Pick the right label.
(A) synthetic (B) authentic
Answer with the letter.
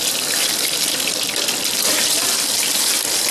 B